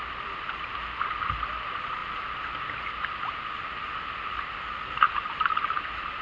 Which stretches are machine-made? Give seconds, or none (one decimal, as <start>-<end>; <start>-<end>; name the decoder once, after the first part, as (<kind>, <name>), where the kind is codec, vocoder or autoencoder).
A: none